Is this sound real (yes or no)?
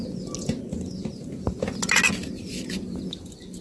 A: yes